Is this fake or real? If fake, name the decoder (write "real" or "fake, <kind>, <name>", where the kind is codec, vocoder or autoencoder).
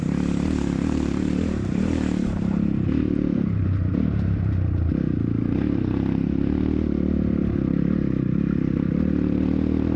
fake, vocoder, BigVGAN v2